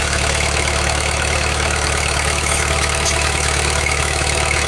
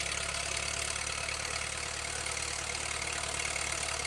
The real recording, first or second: second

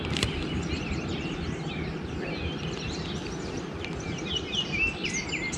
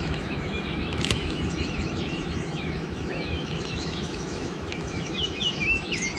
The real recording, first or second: first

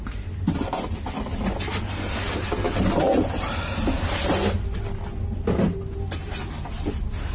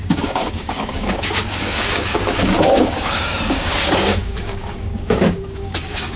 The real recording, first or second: first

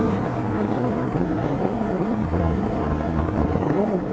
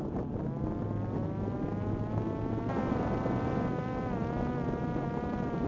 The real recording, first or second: second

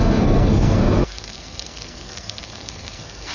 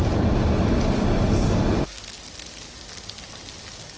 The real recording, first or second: second